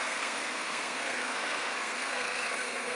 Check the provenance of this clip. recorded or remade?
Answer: remade